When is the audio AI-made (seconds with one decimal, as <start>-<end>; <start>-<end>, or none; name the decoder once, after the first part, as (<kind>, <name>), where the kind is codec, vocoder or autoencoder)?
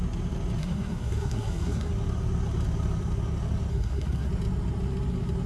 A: 0.6-1.9 (codec, SNAC); 3.7-4.3